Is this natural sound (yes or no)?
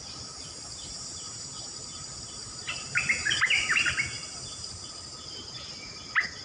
yes